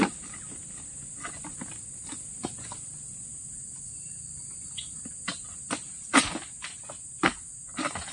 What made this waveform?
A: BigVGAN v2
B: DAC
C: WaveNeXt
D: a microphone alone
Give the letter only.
D